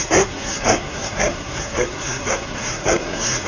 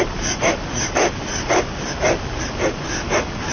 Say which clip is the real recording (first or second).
second